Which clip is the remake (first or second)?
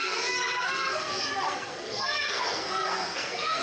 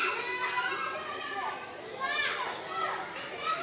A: first